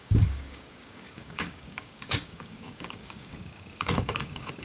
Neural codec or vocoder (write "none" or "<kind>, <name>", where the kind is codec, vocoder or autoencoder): codec, DAC